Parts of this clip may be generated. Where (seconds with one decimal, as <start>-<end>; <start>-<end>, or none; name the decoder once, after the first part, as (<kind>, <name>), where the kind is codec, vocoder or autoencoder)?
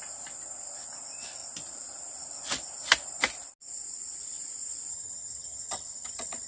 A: 4.9-6.5 (vocoder, HiFi-GAN)